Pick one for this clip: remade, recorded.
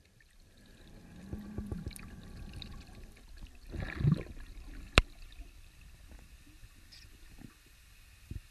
recorded